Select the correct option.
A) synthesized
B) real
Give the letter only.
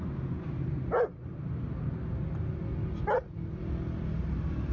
B